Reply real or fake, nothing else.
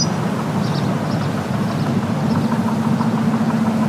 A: real